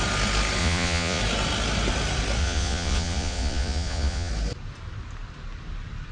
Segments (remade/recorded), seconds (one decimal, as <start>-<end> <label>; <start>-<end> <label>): 0.0-0.6 recorded; 0.6-1.2 remade; 1.2-2.4 recorded; 2.4-4.3 remade; 4.3-6.1 recorded